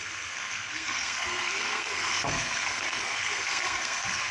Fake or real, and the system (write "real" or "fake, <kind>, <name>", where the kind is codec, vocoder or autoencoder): fake, codec, SNAC